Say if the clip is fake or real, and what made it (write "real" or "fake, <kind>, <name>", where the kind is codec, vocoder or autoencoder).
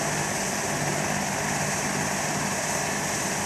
real